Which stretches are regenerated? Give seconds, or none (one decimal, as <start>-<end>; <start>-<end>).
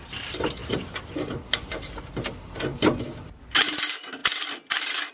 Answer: none